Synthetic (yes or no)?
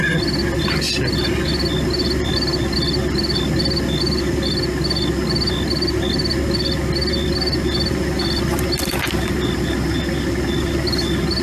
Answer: no